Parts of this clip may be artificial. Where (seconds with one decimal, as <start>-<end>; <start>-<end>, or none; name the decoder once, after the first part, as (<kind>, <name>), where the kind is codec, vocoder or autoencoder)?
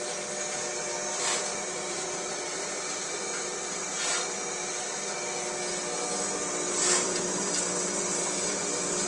1.5-3.9 (vocoder, BigVGAN v2); 6.8-7.4